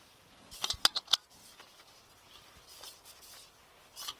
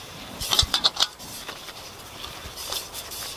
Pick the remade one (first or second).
second